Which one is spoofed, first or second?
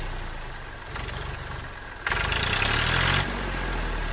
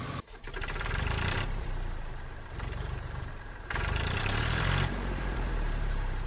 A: second